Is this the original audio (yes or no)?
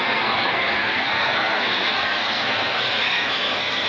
no